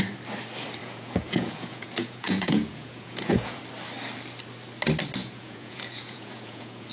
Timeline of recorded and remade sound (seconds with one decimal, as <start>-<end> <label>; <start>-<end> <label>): 0.0-0.8 recorded; 0.8-3.6 remade; 3.6-5.2 recorded; 5.2-6.9 remade